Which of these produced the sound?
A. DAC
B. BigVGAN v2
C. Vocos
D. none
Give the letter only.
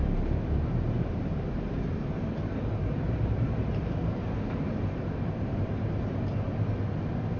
B